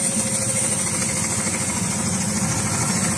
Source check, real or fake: fake